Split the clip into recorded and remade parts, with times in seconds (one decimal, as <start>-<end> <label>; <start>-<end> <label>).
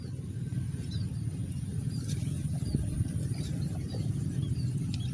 0.0-1.7 recorded; 1.7-5.1 remade